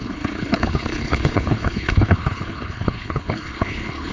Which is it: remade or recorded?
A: remade